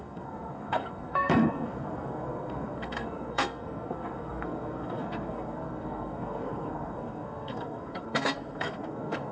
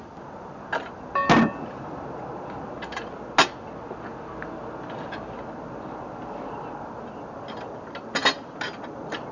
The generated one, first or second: first